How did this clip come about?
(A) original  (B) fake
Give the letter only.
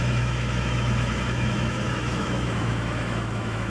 B